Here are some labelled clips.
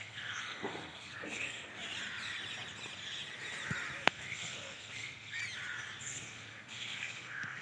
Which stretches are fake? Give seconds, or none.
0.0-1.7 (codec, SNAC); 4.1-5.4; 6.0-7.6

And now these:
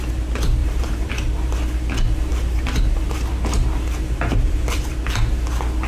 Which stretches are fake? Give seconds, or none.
0.6-1.1 (vocoder, BigVGAN v2); 2.3-4.9

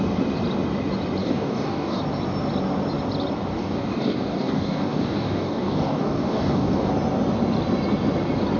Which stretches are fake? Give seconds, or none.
1.2-2.0 (codec, DAC); 3.5-6.9

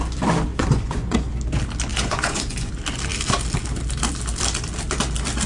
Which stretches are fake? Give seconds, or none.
0.5-1.3 (vocoder, Vocos); 1.9-2.7